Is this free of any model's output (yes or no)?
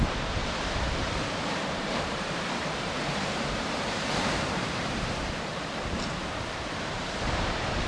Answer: no